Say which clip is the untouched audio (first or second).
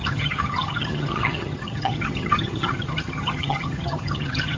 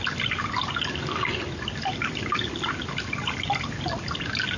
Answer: second